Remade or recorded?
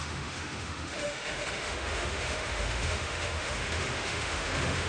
remade